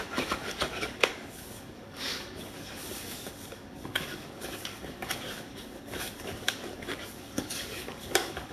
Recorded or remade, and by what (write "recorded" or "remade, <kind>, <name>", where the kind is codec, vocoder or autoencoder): remade, codec, DAC